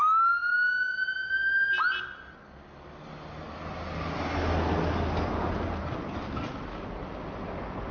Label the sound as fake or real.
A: real